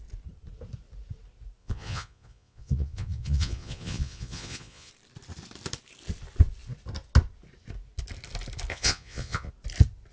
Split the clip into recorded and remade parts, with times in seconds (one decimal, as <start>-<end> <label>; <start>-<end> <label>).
0.0-1.6 recorded; 1.6-4.9 remade; 4.9-8.7 recorded; 8.7-9.5 remade; 9.5-10.1 recorded